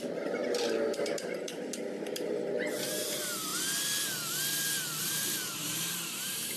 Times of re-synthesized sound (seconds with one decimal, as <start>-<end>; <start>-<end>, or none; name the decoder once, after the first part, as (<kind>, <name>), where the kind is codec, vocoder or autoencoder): 0.0-0.4 (vocoder, BigVGAN v2); 2.9-3.5; 5.0-6.6

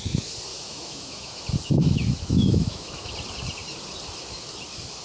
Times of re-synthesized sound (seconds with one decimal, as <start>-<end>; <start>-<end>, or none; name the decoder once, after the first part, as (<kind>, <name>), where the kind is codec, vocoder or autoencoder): 0.5-1.4 (autoencoder, DAC-VAE); 1.8-3.1

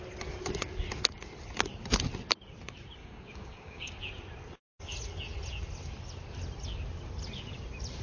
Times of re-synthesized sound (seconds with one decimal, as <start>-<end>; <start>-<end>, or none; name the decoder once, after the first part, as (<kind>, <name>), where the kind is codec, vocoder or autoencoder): 3.0-4.0 (codec, DAC)

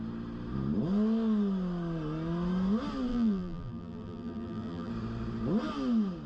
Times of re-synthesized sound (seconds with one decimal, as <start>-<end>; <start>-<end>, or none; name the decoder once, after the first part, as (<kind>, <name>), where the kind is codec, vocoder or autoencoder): 3.1-4.9 (vocoder, BigVGAN v2)

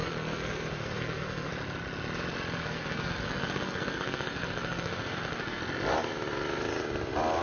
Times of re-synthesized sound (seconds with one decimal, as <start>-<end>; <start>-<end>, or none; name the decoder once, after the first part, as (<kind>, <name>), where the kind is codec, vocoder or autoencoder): 0.0-1.5 (codec, SNAC); 2.6-5.6